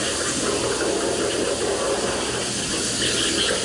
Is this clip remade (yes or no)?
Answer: no